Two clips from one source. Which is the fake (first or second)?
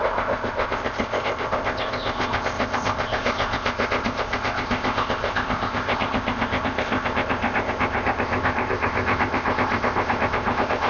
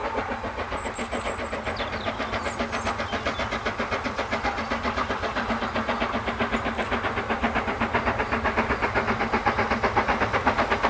first